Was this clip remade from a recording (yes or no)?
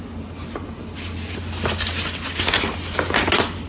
no